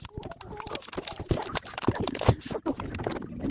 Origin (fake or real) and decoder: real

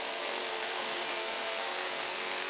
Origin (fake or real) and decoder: fake, codec, SNAC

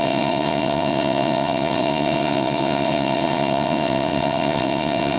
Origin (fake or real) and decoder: fake, vocoder, WaveNeXt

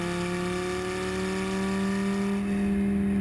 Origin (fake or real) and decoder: real